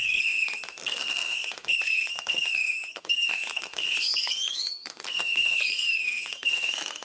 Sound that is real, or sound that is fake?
fake